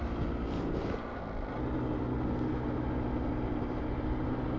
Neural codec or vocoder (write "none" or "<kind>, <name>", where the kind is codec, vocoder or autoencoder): none